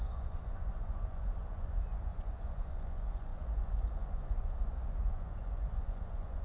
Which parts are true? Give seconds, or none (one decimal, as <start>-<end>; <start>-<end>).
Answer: none